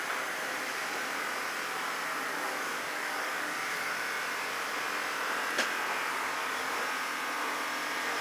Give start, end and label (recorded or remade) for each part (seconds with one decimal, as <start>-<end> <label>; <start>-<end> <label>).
0.0-2.3 recorded; 2.3-4.0 remade; 4.0-6.1 recorded; 6.1-6.8 remade; 6.8-8.2 recorded